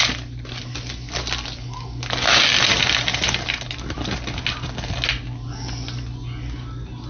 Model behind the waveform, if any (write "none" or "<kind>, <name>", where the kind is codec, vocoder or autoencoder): none